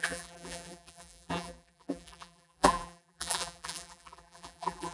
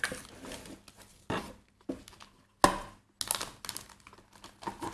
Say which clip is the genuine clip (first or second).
second